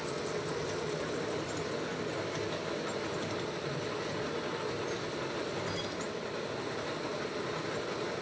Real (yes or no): yes